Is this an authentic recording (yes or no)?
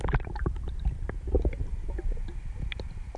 yes